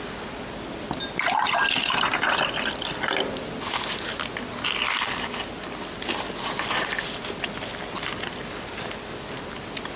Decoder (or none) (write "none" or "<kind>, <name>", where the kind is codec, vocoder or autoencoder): none